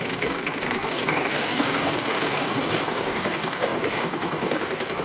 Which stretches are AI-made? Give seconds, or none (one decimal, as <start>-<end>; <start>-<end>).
0.0-5.0